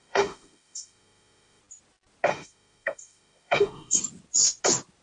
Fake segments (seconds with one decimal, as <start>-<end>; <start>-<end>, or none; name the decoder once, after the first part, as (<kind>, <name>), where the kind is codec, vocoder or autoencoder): 0.0-1.6 (autoencoder, DAC-VAE); 2.3-4.0